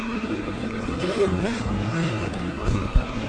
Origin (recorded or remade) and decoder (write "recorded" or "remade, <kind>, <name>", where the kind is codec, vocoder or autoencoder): remade, codec, SNAC